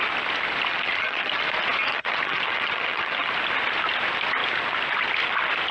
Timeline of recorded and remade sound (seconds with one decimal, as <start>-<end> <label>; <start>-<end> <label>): 0.0-0.7 recorded; 0.7-1.4 remade; 1.4-1.9 recorded; 1.9-3.3 remade; 3.3-5.7 recorded